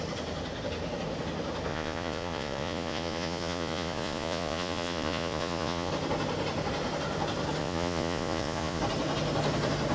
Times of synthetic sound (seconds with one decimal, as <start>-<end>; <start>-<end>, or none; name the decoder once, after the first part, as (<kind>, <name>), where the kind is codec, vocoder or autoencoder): 1.7-5.9 (vocoder, Vocos); 7.6-8.8